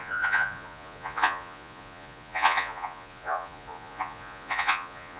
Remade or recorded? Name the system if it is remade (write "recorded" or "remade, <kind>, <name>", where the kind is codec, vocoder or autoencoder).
remade, vocoder, Vocos